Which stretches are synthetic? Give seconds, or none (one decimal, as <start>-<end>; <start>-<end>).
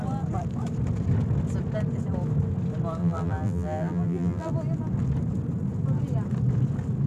3.0-4.5